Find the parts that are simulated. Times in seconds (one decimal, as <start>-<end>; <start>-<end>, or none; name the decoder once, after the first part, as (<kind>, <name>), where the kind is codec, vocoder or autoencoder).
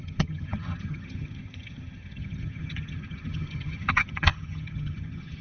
0.0-5.4 (vocoder, HiFi-GAN)